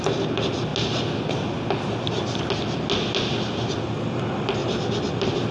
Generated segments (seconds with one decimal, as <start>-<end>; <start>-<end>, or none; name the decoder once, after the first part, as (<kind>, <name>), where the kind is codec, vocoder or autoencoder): none